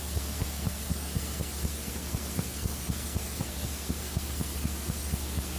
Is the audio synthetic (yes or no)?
yes